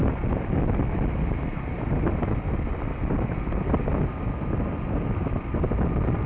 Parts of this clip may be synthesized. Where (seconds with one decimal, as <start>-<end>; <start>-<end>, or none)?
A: none